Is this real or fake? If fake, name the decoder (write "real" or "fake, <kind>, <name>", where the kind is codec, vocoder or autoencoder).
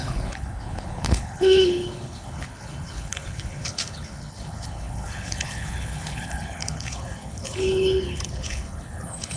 fake, codec, HILCodec